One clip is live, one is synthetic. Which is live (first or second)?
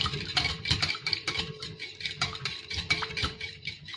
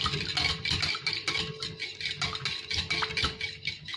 second